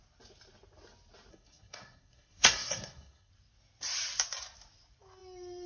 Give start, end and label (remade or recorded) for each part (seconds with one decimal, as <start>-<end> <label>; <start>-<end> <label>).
0.0-1.3 recorded; 1.3-3.3 remade; 3.3-5.7 recorded

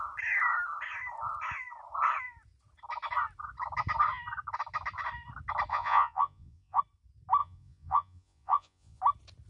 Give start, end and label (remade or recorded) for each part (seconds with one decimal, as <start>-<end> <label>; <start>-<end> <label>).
0.0-5.7 recorded; 5.7-6.8 remade; 6.8-7.4 recorded; 7.4-9.0 remade; 9.0-9.5 recorded

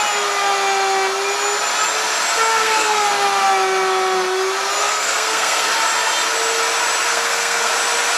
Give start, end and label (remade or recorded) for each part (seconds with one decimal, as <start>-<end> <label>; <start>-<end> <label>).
0.0-2.5 recorded; 2.5-3.1 remade; 3.1-4.8 recorded; 4.8-5.7 remade; 5.7-7.1 recorded; 7.1-7.7 remade; 7.7-8.2 recorded

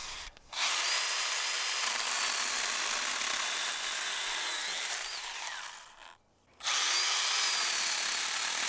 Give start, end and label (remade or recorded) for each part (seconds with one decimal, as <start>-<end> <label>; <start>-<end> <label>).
0.0-0.7 remade; 0.7-8.7 recorded

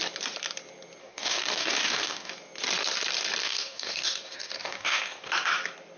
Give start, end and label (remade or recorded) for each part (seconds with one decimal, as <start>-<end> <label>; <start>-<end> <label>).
0.0-1.0 recorded; 1.0-2.3 remade; 2.3-3.4 recorded; 3.4-5.3 remade; 5.3-6.0 recorded

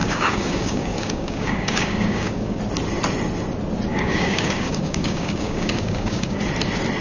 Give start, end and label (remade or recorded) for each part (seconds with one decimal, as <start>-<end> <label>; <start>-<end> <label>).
0.0-2.6 remade; 2.6-3.9 recorded; 3.9-6.4 remade; 6.4-7.0 recorded